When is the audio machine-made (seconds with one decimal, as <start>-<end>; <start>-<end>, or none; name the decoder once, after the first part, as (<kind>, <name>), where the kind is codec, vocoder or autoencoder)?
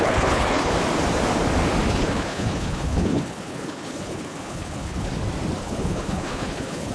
0.0-0.7 (codec, HILCodec); 1.9-5.1; 5.6-6.9